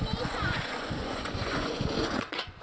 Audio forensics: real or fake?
fake